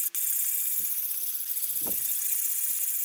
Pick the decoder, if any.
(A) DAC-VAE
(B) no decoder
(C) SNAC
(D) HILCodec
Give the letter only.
B